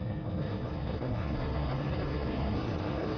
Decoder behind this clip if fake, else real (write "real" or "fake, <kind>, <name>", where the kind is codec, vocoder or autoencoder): fake, codec, SNAC